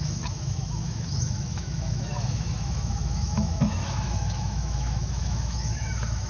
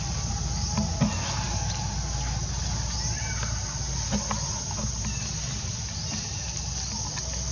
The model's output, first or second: first